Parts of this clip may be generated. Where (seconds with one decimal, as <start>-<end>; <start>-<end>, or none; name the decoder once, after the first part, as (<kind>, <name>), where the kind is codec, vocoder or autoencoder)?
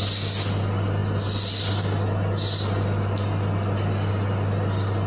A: none